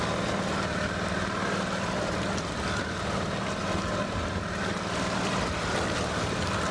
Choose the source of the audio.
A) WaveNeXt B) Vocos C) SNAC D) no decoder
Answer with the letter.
D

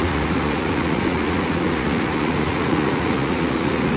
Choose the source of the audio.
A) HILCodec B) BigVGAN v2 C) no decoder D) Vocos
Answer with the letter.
D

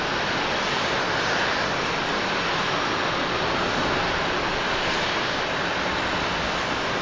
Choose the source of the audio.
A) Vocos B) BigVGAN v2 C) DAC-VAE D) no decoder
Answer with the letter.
D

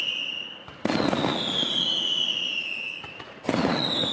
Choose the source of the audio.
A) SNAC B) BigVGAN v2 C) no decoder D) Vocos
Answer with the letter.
D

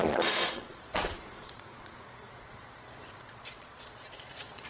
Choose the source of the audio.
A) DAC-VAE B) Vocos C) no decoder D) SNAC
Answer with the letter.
B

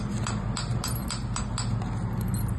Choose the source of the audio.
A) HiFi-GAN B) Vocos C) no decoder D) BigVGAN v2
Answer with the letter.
C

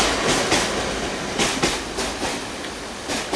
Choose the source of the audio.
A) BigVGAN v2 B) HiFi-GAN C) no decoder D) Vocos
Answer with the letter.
C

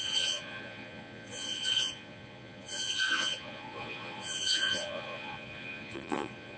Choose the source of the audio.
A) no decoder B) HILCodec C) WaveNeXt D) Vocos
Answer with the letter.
D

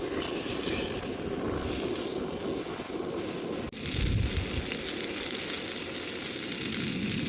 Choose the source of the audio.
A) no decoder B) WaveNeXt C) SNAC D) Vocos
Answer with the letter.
A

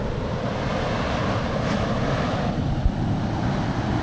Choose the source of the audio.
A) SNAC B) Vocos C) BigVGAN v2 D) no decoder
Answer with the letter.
D